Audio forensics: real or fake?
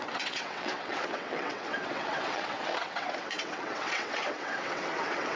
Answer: fake